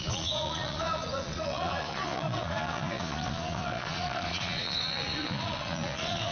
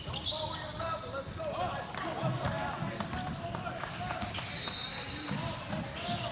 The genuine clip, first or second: second